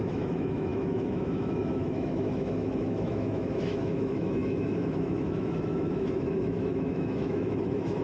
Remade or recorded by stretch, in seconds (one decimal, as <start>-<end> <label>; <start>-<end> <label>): 0.0-8.0 remade